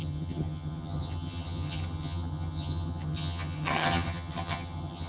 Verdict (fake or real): fake